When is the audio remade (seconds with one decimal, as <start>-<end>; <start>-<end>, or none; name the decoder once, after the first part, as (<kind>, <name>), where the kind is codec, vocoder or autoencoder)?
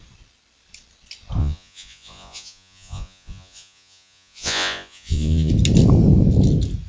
1.4-5.5 (vocoder, Vocos)